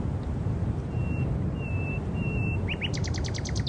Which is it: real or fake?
real